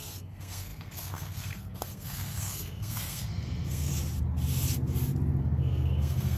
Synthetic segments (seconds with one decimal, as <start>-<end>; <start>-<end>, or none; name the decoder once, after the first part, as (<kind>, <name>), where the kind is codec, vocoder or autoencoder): 0.0-3.9 (codec, SNAC); 5.4-6.4